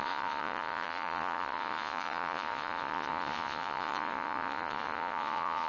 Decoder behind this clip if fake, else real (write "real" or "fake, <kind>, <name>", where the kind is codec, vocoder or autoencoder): fake, vocoder, Vocos